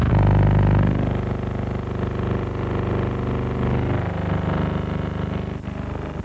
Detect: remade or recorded recorded